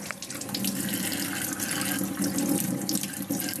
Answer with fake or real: real